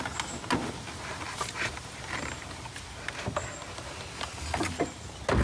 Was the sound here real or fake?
real